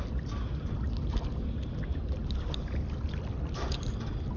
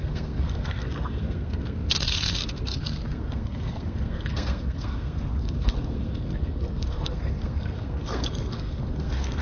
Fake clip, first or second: second